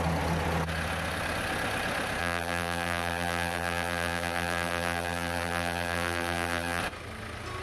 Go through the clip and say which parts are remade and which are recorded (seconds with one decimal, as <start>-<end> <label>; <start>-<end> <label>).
0.0-2.2 recorded; 2.2-6.8 remade; 6.8-7.6 recorded